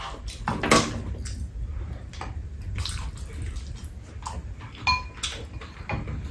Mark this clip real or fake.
real